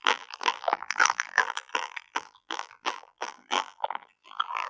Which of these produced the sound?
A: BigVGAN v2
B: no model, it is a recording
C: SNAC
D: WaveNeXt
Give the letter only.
A